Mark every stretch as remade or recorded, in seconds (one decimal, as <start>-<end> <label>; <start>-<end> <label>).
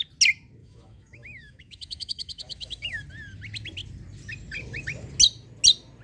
0.0-0.6 recorded; 0.6-3.0 remade; 3.0-6.0 recorded